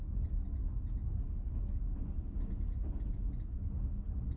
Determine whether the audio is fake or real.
real